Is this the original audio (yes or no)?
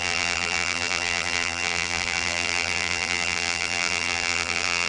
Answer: no